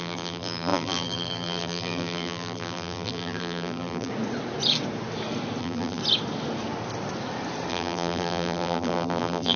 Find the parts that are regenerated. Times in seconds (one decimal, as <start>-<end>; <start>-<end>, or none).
0.0-4.1; 5.6-6.0; 7.7-9.6